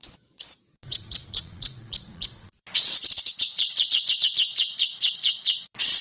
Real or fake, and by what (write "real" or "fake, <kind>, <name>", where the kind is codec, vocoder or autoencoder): fake, vocoder, Vocos